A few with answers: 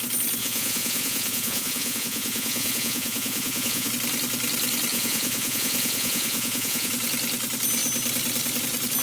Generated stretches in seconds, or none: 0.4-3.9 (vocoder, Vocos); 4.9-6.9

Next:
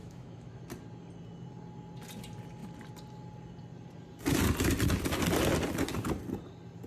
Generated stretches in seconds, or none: 0.0-0.6 (autoencoder, DAC-VAE)